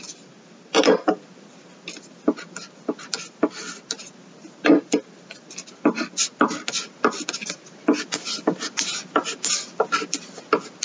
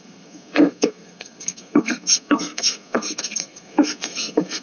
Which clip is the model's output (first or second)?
second